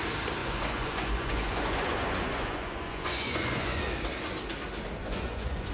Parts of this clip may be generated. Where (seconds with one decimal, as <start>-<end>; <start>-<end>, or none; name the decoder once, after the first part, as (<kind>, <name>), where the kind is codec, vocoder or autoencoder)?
0.4-3.8 (vocoder, Vocos); 5.0-5.7